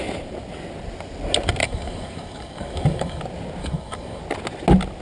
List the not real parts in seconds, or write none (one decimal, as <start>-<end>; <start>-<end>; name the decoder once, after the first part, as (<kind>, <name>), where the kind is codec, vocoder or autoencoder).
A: 1.6-3.2 (codec, DAC); 3.6-4.2